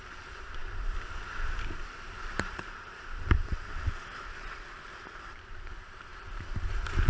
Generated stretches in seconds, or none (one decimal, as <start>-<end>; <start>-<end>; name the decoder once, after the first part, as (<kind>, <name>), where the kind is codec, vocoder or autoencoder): 0.0-7.1 (vocoder, BigVGAN v2)